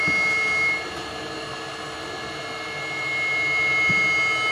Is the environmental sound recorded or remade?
recorded